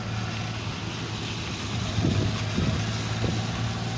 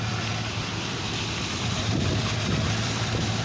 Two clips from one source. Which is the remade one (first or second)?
second